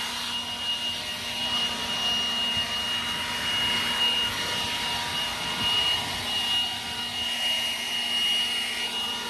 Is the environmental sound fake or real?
real